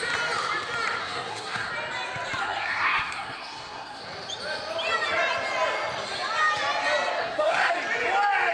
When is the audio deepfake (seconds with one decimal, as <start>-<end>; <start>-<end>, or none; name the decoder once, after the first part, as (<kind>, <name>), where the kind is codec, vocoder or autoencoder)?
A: 1.0-1.7 (codec, SNAC); 2.4-4.0; 7.2-7.7